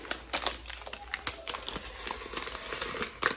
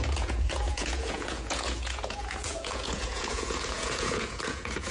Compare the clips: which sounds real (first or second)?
first